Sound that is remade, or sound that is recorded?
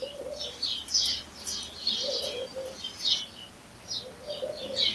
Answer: recorded